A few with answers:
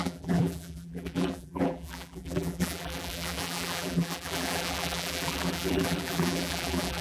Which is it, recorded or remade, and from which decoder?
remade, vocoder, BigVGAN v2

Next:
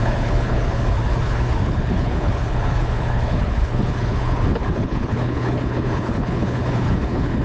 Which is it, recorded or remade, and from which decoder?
remade, codec, HILCodec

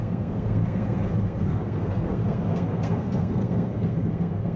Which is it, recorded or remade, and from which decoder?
remade, codec, SNAC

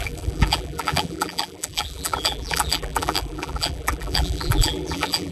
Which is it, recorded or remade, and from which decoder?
remade, vocoder, BigVGAN v2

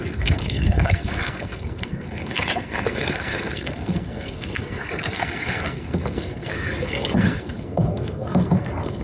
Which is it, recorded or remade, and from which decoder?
remade, codec, SNAC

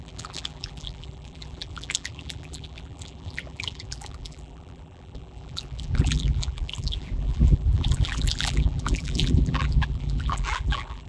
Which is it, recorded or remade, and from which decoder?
remade, vocoder, BigVGAN v2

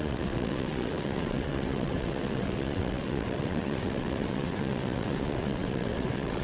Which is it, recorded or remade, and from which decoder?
remade, vocoder, WaveNeXt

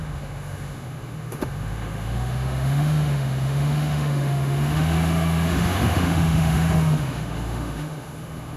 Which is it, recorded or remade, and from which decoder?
remade, autoencoder, DAC-VAE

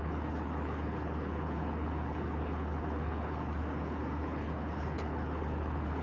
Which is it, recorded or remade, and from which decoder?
remade, codec, HILCodec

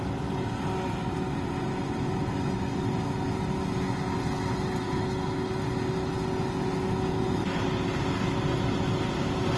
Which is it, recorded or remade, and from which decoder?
recorded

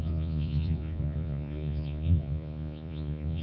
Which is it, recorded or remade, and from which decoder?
remade, vocoder, Vocos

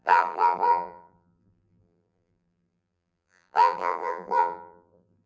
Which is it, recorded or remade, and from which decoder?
remade, vocoder, BigVGAN v2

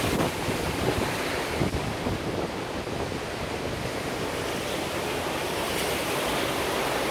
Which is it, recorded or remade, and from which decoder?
recorded